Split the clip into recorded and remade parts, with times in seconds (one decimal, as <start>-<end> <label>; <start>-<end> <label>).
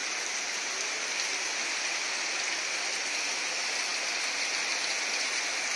0.0-2.5 remade; 2.5-5.8 recorded